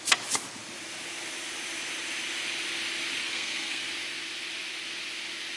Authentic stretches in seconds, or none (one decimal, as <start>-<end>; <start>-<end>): 0.0-3.2; 3.8-5.6